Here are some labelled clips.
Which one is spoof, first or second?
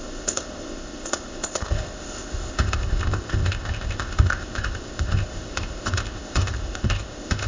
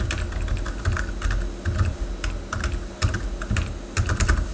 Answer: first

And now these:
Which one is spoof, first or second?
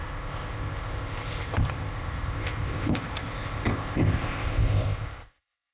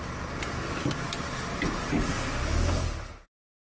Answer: first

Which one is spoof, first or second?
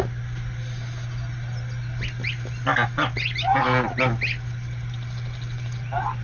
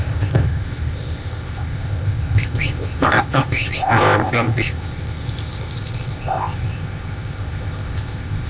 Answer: second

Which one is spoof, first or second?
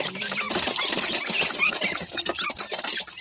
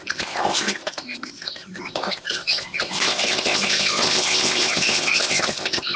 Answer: second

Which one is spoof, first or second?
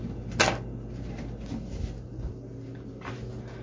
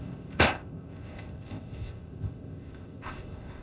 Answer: second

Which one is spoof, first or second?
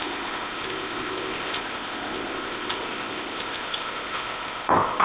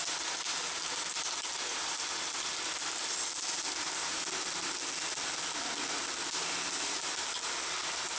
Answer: first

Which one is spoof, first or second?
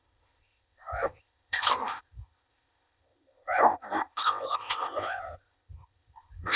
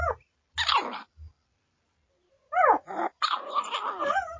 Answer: first